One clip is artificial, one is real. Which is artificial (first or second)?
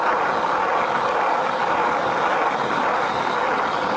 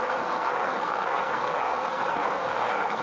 second